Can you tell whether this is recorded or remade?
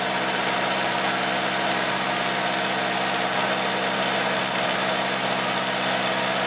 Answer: recorded